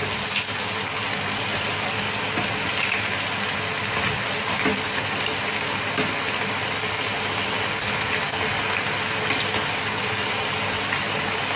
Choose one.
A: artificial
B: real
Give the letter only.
B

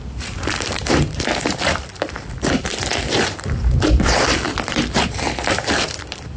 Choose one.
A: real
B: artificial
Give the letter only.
B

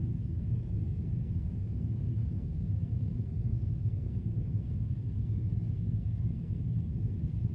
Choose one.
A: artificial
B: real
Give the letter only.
A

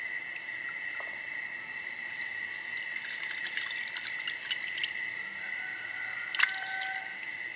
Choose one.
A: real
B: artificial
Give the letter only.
A